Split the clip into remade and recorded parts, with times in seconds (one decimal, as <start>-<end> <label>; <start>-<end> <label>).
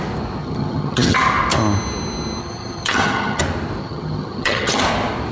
0.0-0.4 recorded; 0.4-1.2 remade; 1.2-2.4 recorded; 2.4-3.4 remade; 3.4-3.8 recorded; 3.8-4.8 remade; 4.8-5.3 recorded